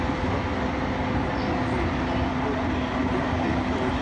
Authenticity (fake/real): real